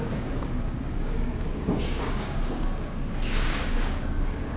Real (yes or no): no